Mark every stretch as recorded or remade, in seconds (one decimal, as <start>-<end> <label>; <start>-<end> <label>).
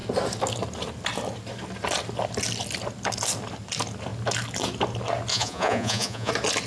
0.0-5.3 recorded; 5.3-6.3 remade; 6.3-6.7 recorded